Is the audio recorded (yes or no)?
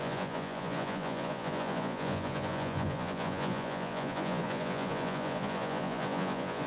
no